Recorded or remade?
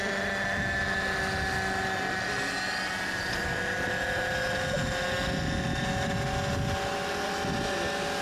recorded